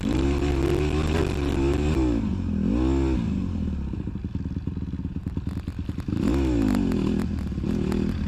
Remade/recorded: recorded